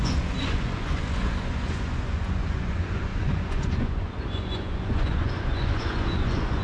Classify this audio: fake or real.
fake